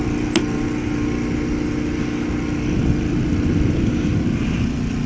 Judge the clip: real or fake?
real